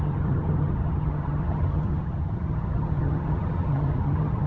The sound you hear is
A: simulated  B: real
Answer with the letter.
A